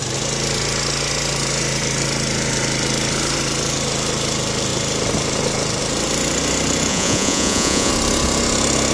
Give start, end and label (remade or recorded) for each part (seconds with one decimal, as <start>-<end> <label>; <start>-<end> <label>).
0.0-6.9 recorded; 6.9-7.9 remade; 7.9-8.9 recorded